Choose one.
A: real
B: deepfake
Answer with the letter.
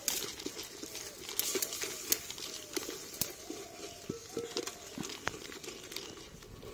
A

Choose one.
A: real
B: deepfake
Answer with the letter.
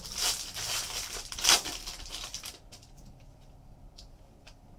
B